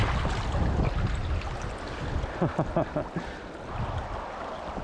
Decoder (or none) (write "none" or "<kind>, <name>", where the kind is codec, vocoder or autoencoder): none